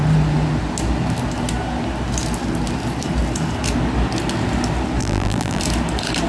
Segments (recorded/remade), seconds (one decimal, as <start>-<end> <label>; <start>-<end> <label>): 0.0-5.0 recorded; 5.0-5.6 remade; 5.6-6.3 recorded